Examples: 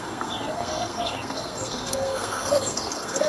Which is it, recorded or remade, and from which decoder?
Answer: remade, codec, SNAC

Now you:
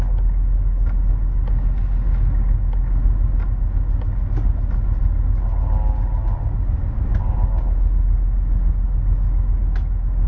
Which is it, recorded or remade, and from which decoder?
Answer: recorded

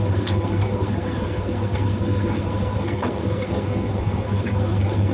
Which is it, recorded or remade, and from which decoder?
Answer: remade, codec, SNAC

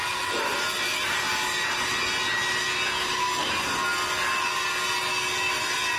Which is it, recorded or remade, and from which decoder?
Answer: recorded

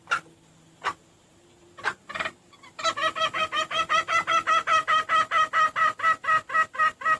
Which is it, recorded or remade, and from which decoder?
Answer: recorded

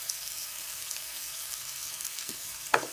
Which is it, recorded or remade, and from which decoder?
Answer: remade, codec, SNAC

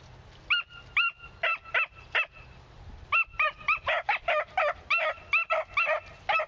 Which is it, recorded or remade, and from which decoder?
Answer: recorded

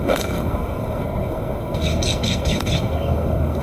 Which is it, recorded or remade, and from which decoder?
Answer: remade, codec, SNAC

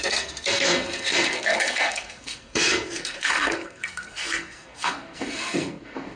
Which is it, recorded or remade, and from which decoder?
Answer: remade, codec, SNAC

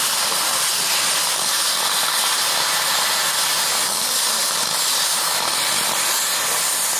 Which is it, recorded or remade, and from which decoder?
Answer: recorded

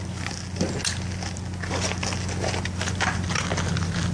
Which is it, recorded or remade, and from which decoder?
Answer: recorded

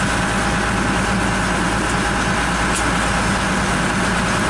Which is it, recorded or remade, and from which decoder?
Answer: recorded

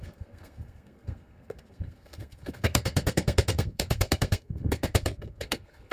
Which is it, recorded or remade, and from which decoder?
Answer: remade, codec, SNAC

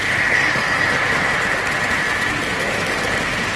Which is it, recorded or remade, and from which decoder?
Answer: recorded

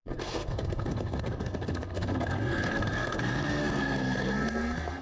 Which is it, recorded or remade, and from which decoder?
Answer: remade, codec, SNAC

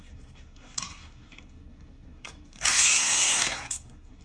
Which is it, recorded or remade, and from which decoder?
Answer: remade, codec, SNAC